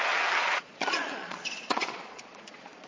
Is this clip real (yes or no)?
no